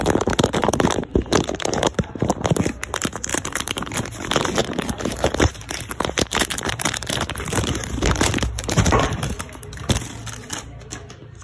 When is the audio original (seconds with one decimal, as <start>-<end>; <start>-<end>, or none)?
0.0-0.6; 2.2-3.3; 3.9-4.6; 9.7-11.4